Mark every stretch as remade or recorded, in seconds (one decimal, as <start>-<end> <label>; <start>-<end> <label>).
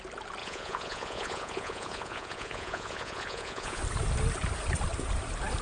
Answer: 0.0-0.4 recorded; 0.4-3.8 remade; 3.8-5.6 recorded